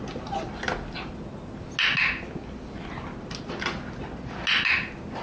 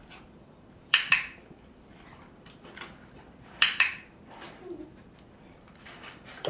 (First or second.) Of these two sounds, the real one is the first